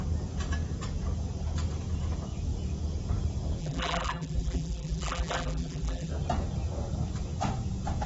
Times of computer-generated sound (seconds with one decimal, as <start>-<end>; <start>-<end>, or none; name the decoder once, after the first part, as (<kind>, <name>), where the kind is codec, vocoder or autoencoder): 3.6-6.1 (vocoder, BigVGAN v2)